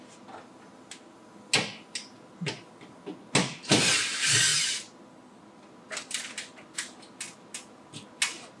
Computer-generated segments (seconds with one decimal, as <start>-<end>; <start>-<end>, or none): none